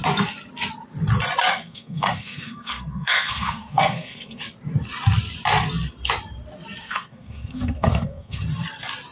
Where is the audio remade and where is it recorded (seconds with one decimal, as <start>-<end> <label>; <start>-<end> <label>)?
0.0-1.5 recorded; 1.5-4.4 remade; 4.4-6.8 recorded; 6.8-8.4 remade; 8.4-9.1 recorded